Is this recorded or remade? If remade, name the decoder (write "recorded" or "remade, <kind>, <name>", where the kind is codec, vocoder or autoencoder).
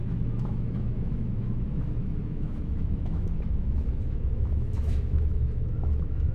remade, autoencoder, DAC-VAE